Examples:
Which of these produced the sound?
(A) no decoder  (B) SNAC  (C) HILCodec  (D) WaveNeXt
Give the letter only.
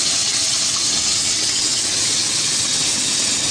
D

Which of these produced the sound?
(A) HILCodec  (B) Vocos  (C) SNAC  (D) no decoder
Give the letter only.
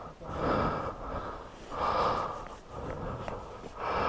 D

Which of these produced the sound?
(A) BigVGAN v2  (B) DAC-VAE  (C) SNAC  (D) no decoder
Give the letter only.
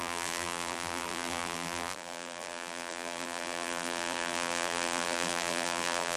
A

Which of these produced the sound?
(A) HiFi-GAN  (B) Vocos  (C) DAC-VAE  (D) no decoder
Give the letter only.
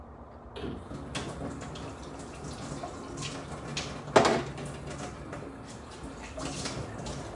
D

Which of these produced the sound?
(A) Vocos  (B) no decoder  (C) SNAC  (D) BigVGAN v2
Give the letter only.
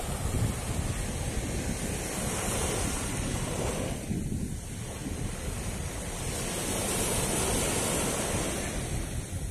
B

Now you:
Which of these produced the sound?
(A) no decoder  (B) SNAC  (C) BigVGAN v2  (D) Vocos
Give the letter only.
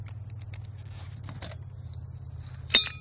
A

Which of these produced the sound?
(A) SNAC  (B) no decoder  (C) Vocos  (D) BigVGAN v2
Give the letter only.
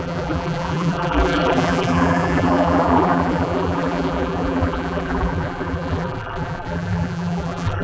D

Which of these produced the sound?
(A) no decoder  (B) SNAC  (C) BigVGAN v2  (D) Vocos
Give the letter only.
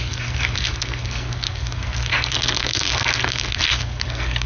B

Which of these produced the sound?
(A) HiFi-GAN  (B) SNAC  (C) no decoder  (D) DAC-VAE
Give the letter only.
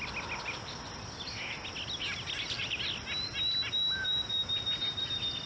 C